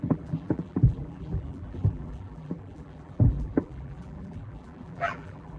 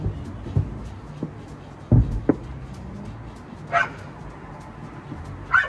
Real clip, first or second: second